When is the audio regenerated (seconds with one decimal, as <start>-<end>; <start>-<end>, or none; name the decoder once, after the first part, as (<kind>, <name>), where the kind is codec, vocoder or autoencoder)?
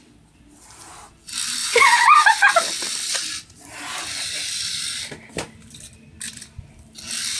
1.6-2.5 (vocoder, Vocos)